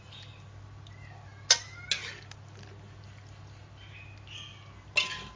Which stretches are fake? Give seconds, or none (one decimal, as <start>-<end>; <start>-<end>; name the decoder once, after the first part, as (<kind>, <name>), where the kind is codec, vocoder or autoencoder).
none